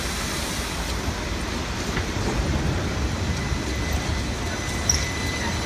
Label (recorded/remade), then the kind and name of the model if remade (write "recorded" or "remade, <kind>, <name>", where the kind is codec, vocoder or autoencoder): recorded